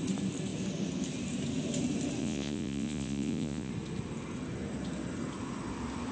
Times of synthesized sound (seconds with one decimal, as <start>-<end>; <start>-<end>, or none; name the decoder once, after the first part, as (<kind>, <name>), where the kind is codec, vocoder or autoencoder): 2.2-3.7 (vocoder, Vocos)